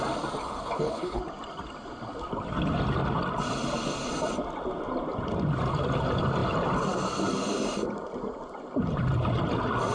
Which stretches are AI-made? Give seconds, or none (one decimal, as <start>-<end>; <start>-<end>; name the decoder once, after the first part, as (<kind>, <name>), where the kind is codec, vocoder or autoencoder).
0.4-1.2 (codec, HILCodec)